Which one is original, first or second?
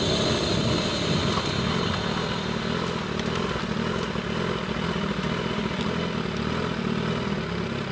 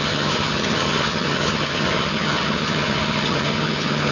first